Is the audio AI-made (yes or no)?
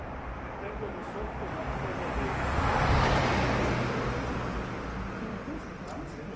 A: no